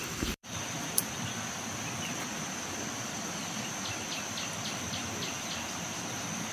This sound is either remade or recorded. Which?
remade